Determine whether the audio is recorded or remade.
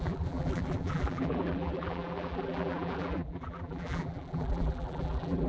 remade